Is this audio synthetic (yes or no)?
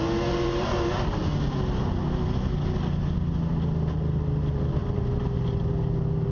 no